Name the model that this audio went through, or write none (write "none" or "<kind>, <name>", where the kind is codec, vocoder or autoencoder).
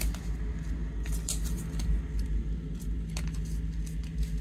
none